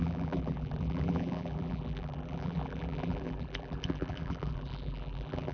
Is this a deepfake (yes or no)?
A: yes